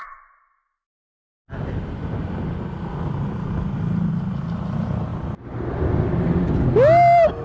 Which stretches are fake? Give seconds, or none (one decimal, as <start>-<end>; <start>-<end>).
none